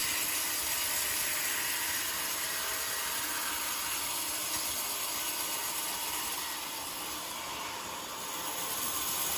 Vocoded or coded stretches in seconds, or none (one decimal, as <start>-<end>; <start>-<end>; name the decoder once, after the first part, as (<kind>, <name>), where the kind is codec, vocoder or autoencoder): none